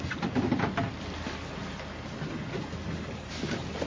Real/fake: real